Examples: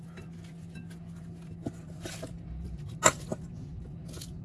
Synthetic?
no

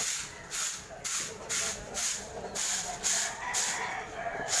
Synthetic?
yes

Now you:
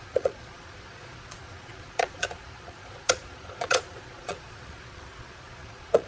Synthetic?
yes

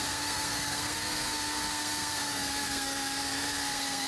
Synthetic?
yes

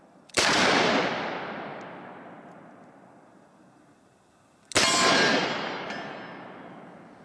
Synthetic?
no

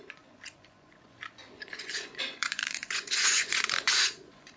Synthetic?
yes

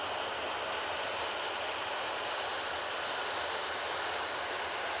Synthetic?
no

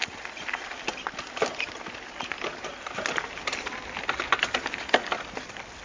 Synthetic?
yes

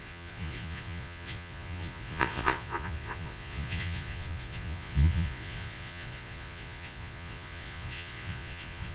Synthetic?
yes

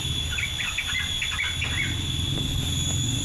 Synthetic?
no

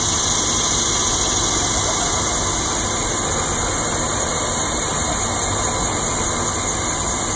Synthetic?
no